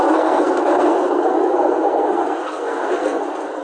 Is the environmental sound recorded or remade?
remade